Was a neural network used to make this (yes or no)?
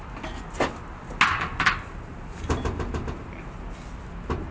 no